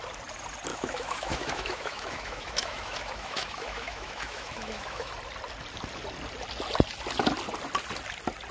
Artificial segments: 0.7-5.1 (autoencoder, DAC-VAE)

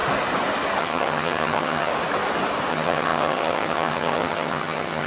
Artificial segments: 0.8-1.9 (vocoder, HiFi-GAN); 2.7-5.1

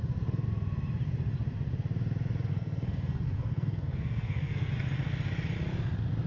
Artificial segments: 2.5-4.7 (codec, SNAC)

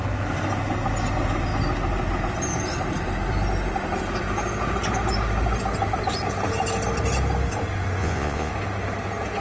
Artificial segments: 8.0-8.5 (vocoder, Vocos)

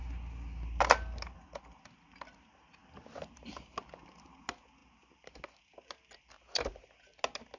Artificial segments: none

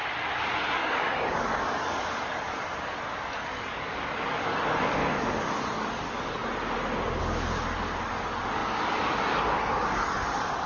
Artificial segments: 0.0-6.4 (codec, DAC); 7.2-10.7

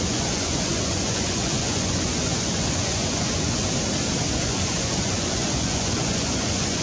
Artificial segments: 0.0-3.6 (vocoder, Vocos); 4.2-6.8

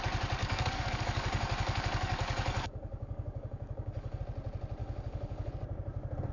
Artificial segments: 0.4-4.2 (codec, DAC); 4.8-5.5